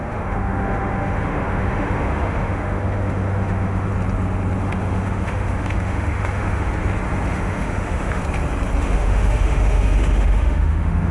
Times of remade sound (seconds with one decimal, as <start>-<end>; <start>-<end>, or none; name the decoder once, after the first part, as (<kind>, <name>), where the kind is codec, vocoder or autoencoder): 0.0-3.9 (autoencoder, DAC-VAE); 4.6-6.7; 7.3-8.2; 8.8-11.1